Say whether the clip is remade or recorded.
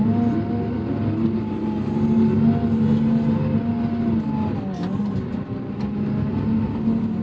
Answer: recorded